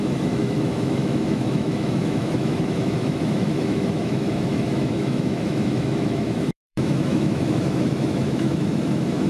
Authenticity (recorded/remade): remade